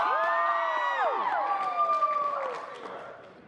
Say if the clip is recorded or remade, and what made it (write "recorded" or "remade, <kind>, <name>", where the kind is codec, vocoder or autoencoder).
recorded